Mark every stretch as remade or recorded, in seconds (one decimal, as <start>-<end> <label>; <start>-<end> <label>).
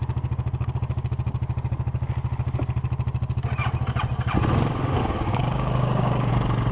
0.0-5.0 recorded; 5.0-6.3 remade; 6.3-6.7 recorded